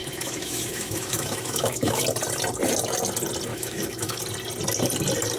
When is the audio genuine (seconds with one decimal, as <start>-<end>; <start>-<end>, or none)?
2.0-3.5; 4.2-5.4